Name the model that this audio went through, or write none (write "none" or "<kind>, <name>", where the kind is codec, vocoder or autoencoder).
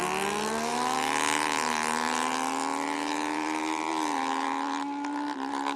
none